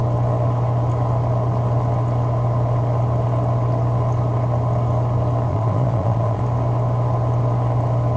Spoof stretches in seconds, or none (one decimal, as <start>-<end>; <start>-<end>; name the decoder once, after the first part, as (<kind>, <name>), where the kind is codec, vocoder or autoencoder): 5.5-6.4 (vocoder, Vocos)

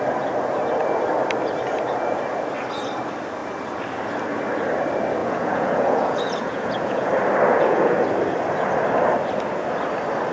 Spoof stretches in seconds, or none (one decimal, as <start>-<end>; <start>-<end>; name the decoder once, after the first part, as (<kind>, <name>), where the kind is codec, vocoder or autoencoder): 5.2-7.1 (vocoder, Vocos); 7.5-8.0

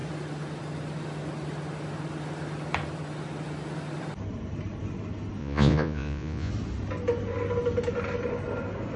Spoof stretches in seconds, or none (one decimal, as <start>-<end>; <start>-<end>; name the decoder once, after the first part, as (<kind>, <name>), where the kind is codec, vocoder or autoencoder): 5.4-6.5 (vocoder, Vocos)

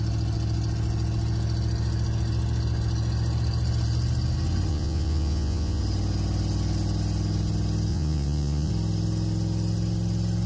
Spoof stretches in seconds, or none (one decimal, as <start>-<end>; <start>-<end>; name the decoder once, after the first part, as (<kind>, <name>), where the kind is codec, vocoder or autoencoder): 4.7-5.8 (vocoder, Vocos); 7.9-8.7

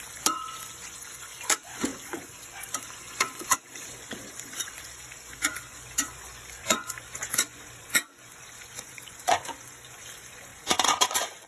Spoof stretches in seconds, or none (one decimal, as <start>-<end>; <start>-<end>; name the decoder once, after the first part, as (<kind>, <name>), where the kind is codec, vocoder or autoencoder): 0.0-11.5 (vocoder, Vocos)

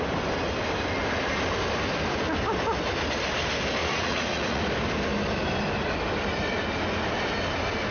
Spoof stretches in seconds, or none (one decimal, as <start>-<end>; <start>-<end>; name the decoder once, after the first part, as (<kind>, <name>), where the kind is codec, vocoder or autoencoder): 3.8-4.6 (vocoder, Vocos)

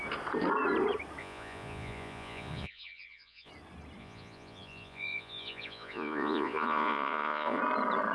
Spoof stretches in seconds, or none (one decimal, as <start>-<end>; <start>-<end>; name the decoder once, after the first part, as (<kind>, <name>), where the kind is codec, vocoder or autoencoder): 1.2-3.5 (vocoder, Vocos); 4.0-7.6

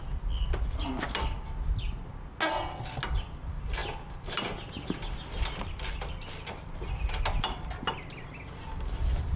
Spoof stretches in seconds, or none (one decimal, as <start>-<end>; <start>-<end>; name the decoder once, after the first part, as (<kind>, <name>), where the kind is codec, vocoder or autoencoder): none